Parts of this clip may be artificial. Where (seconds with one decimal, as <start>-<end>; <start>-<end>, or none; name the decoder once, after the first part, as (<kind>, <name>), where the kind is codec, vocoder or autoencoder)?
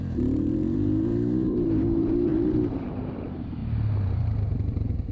0.0-3.6 (vocoder, BigVGAN v2); 4.5-5.1